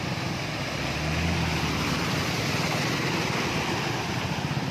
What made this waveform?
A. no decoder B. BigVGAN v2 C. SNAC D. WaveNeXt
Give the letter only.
A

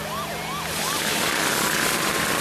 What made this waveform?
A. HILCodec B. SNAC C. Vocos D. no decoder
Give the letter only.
D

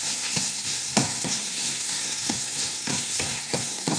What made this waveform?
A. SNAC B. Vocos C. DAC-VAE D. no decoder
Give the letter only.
A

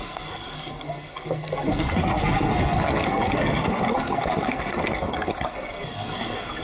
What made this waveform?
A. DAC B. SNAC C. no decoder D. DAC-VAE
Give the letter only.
B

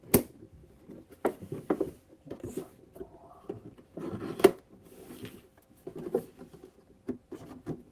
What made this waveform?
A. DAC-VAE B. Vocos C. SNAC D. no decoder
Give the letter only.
D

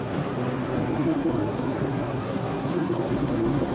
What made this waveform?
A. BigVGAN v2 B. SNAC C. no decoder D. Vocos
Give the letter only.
B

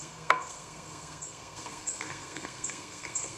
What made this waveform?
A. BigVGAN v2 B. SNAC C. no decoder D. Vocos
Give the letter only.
B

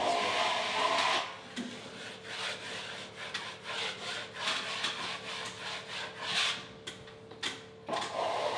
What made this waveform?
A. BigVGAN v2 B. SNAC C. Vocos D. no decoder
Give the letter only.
D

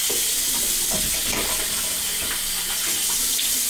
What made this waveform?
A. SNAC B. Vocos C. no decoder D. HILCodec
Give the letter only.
C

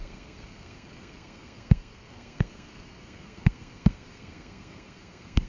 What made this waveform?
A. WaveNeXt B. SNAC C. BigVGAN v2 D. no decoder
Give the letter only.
B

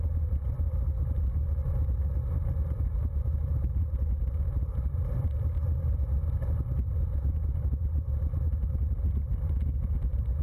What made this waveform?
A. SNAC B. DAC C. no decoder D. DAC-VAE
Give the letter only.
C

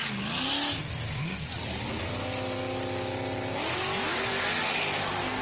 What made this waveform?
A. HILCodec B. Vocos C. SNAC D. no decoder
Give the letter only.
D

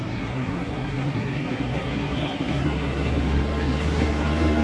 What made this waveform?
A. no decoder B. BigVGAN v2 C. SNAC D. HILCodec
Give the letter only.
C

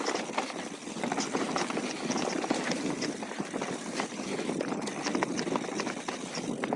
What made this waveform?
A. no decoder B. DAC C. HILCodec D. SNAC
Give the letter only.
A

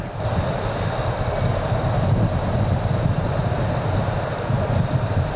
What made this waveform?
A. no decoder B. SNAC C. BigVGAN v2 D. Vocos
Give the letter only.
A